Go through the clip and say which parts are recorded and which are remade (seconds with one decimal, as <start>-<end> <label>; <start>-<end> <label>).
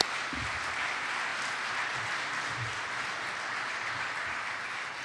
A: 0.0-5.0 recorded